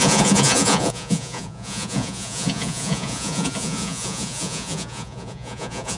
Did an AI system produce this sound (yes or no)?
yes